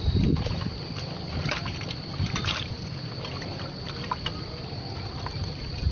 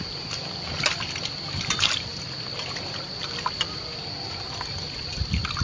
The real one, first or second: second